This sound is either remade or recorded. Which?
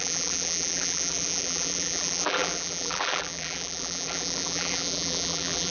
remade